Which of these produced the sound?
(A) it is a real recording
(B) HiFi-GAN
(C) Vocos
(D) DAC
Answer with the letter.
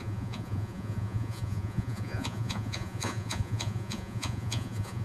C